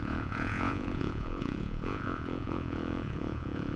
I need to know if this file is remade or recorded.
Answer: remade